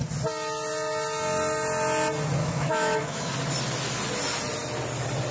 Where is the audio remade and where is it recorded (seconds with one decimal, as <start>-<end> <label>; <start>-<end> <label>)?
0.0-2.4 recorded; 2.4-3.3 remade; 3.3-5.3 recorded